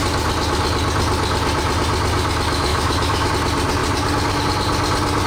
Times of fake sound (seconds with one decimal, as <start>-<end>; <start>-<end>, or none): 2.7-3.3